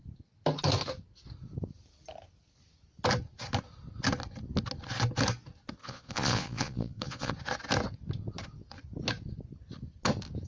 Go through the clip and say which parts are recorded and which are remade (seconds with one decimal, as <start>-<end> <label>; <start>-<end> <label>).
0.0-5.8 recorded; 5.8-7.3 remade; 7.3-10.5 recorded